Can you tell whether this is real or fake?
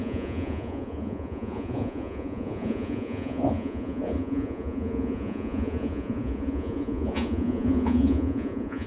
fake